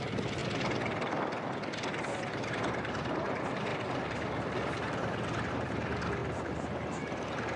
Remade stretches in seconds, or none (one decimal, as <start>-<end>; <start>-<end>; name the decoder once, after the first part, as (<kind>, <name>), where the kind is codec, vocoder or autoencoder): 0.0-0.4 (vocoder, BigVGAN v2); 2.2-3.7; 5.5-7.6